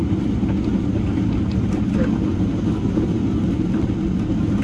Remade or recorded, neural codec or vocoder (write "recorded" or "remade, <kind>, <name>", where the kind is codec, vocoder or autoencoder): recorded